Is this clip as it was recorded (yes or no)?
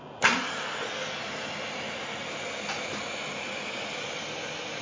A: yes